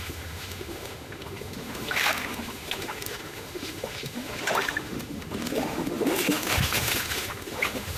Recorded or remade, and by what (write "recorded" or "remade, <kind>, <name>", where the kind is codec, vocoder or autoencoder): remade, autoencoder, DAC-VAE